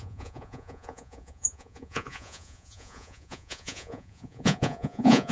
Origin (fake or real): fake